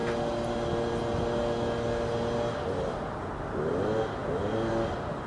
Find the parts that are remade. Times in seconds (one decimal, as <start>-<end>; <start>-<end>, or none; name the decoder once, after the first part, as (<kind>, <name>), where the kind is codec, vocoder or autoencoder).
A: none

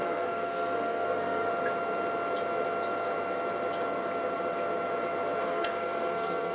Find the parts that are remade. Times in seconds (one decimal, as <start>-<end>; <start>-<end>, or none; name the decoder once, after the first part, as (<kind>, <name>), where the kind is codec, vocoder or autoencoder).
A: 0.0-1.5 (codec, SNAC); 5.4-6.5

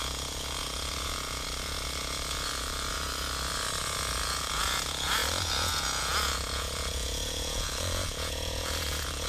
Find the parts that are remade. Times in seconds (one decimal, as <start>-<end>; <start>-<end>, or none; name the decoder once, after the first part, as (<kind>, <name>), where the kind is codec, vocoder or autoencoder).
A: 0.0-9.3 (vocoder, Vocos)

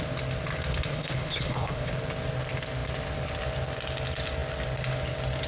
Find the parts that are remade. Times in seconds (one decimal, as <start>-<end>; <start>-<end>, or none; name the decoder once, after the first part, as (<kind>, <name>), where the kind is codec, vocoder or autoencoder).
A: 0.9-1.9 (codec, HILCodec)

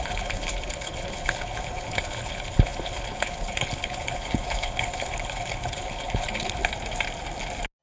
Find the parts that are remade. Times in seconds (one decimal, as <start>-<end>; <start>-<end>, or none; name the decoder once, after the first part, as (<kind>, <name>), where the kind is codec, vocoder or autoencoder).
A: 0.0-6.6 (codec, HILCodec)

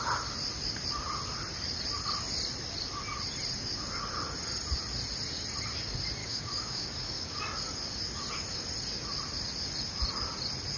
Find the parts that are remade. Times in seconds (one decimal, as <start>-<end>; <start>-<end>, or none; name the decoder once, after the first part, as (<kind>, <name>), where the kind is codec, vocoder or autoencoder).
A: 6.2-7.4 (codec, DAC)